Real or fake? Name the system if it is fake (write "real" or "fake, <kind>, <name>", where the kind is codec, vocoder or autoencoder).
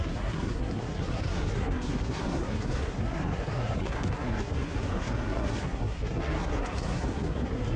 fake, codec, SNAC